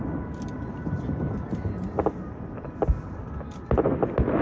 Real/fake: real